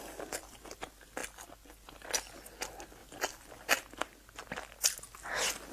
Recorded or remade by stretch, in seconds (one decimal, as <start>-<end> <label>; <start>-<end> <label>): 0.0-5.7 recorded